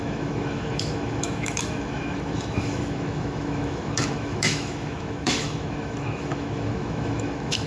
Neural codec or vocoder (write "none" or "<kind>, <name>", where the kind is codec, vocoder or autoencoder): autoencoder, DAC-VAE